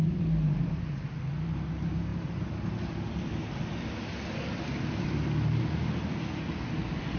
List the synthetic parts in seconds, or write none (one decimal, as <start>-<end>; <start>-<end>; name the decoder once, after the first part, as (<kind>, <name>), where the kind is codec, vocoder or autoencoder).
none